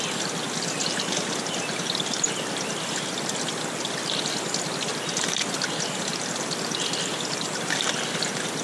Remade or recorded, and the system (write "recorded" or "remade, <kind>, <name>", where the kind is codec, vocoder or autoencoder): recorded